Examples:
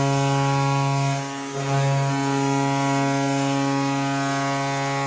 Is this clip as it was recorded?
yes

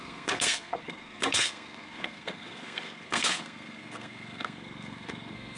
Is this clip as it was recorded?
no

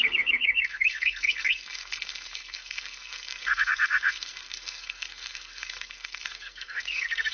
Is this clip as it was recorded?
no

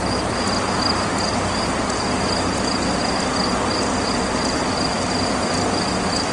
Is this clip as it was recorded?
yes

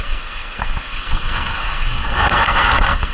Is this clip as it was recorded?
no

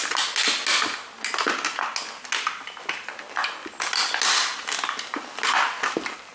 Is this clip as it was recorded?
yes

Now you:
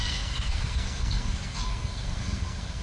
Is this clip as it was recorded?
no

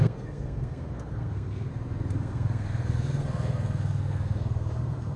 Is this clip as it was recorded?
no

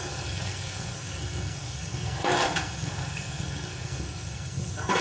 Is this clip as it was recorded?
no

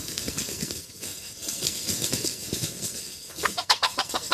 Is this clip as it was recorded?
no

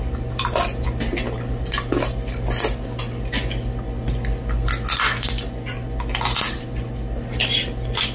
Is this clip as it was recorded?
yes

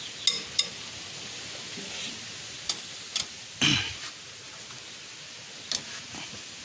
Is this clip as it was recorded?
yes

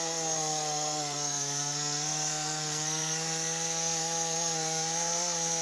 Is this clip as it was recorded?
no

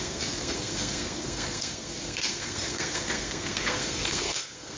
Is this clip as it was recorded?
no